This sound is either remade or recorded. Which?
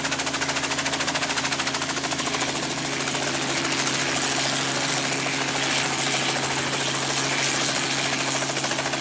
recorded